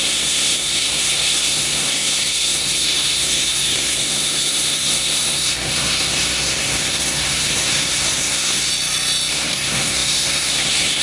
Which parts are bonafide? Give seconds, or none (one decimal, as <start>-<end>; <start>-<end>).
8.7-9.3